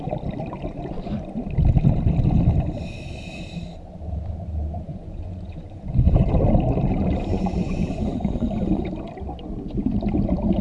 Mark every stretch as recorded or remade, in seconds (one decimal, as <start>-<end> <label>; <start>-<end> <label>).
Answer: 0.0-4.9 recorded; 4.9-6.3 remade; 6.3-7.3 recorded; 7.3-8.8 remade; 8.8-10.6 recorded